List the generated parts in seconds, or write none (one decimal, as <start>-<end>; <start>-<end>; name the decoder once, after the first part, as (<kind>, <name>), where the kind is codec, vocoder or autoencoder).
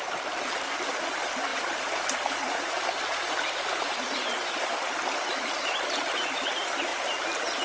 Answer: none